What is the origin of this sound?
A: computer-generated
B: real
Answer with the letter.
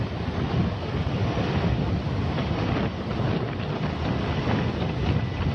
B